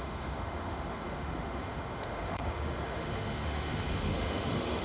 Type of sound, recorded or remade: remade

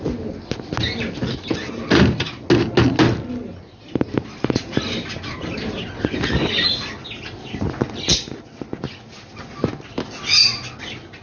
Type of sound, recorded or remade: recorded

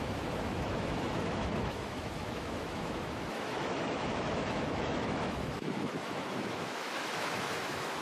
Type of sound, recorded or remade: remade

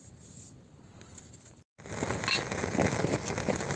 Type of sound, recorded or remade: recorded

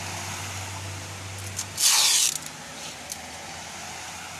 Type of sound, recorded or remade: recorded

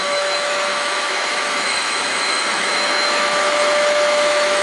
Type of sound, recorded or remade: remade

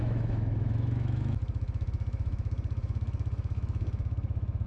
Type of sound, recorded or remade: remade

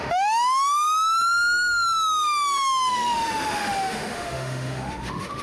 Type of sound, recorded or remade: remade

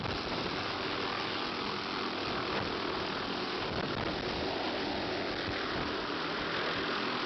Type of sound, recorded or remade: recorded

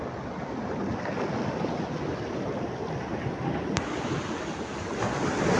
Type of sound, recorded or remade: recorded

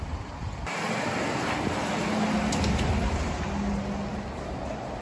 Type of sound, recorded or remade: recorded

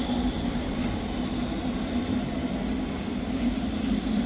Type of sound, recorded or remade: recorded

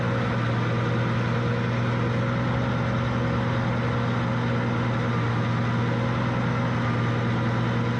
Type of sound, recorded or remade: recorded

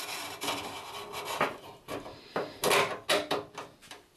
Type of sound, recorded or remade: recorded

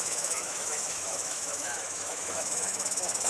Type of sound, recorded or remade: remade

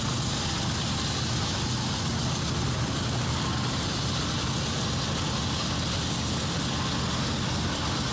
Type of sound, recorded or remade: recorded